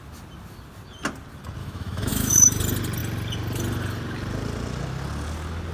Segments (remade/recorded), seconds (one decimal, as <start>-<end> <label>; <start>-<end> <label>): 0.0-1.6 recorded; 1.6-2.6 remade; 2.6-5.7 recorded